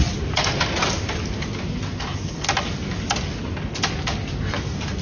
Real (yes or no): yes